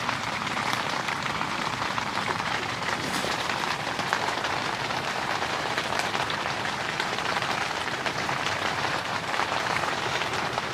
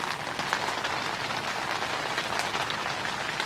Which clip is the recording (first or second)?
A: second